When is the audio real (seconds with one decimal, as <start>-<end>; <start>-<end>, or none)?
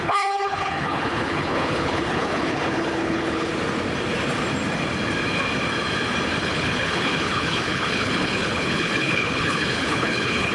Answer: 3.5-6.4